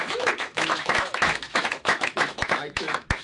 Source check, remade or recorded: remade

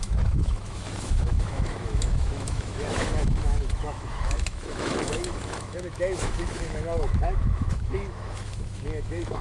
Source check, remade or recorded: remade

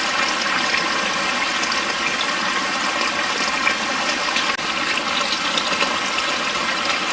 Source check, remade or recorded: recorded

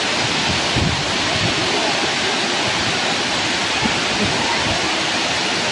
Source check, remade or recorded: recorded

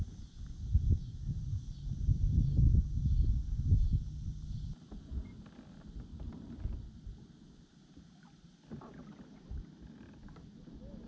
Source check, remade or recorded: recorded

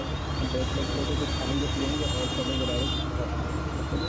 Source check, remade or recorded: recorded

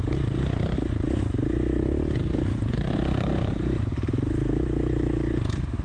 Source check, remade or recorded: recorded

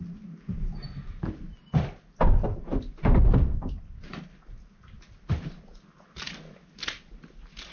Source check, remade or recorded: recorded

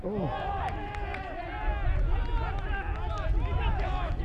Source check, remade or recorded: recorded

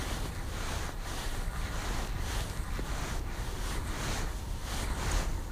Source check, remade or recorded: recorded